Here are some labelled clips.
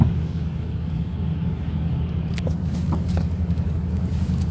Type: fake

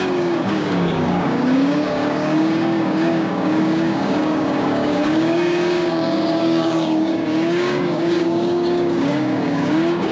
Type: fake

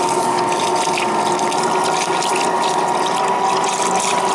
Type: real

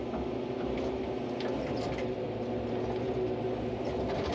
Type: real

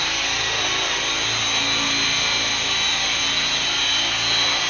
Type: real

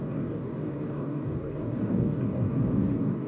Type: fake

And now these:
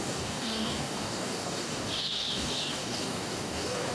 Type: fake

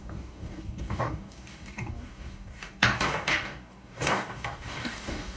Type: fake